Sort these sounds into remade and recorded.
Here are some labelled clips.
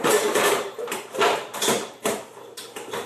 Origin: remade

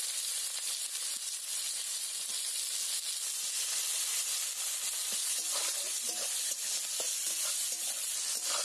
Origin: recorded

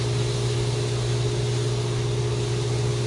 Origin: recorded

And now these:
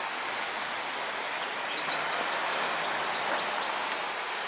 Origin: recorded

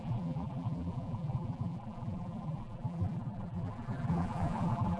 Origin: remade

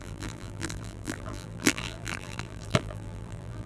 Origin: remade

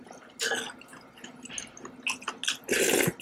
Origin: recorded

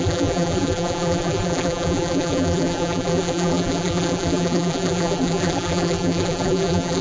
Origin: remade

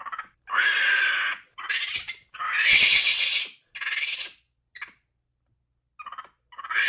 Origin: recorded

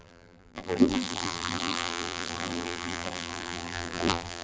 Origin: remade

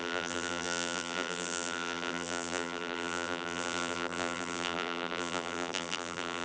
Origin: remade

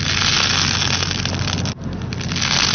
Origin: recorded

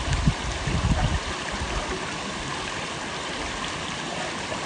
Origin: recorded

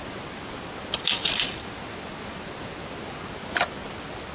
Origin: recorded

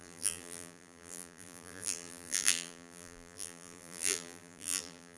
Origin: remade